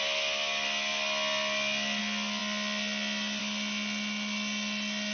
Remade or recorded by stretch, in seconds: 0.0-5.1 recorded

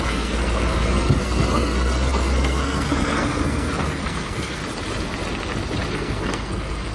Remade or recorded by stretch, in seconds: 0.0-4.6 remade; 4.6-5.9 recorded; 5.9-6.9 remade

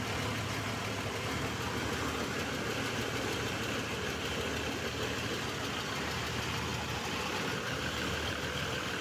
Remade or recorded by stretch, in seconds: 0.0-9.0 recorded

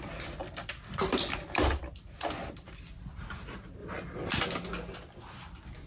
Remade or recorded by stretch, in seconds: 0.0-0.4 recorded; 0.4-3.2 remade; 3.2-5.9 recorded

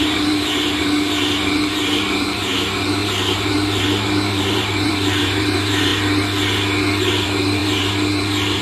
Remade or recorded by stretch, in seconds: 0.0-5.9 remade; 5.9-7.0 recorded; 7.0-8.6 remade

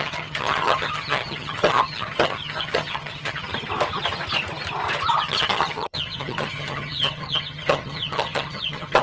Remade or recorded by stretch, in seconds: 0.0-3.5 remade; 3.5-5.2 recorded; 5.2-9.0 remade